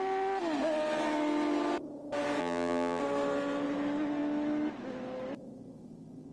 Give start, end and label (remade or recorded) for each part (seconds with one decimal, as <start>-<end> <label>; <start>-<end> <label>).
0.0-2.4 recorded; 2.4-3.0 remade; 3.0-6.3 recorded